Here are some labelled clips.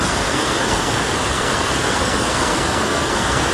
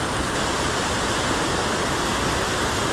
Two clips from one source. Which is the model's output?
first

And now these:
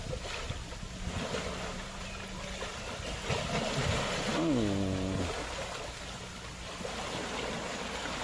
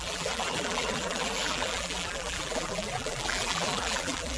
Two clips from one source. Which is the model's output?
second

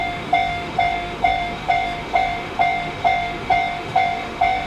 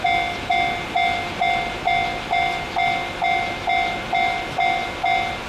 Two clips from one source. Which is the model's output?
first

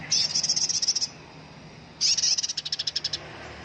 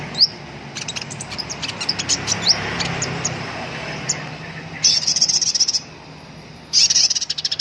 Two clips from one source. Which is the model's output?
second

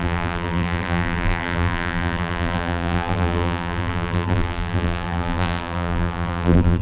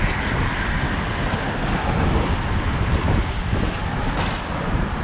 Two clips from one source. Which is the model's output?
first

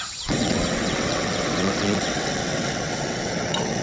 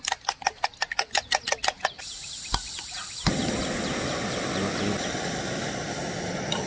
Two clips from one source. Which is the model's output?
first